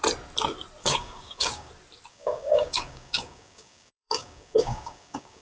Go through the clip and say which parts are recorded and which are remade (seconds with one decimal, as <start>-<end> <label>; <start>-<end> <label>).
0.0-0.8 recorded; 0.8-1.7 remade; 1.7-2.1 recorded; 2.1-5.4 remade